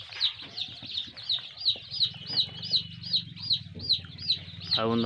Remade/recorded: recorded